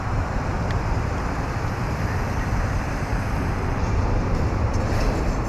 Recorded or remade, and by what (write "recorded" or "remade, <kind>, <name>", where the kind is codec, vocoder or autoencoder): remade, vocoder, BigVGAN v2